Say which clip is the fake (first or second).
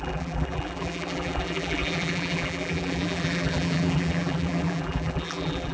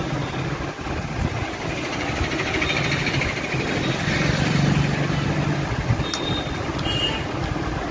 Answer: first